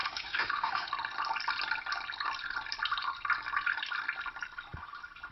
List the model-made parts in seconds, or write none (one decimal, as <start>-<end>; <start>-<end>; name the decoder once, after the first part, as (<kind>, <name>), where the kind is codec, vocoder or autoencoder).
0.0-0.9 (autoencoder, DAC-VAE)